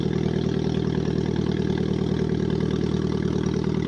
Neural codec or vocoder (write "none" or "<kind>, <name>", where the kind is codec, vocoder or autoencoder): none